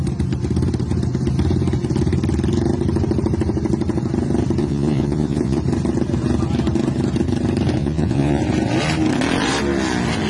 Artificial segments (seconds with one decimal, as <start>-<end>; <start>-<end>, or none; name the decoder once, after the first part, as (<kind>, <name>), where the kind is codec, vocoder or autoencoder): 4.6-5.6 (vocoder, Vocos); 7.8-8.4